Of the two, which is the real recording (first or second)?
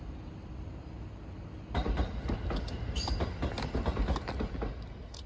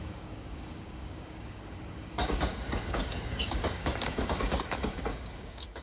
first